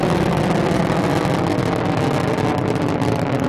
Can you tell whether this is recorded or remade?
recorded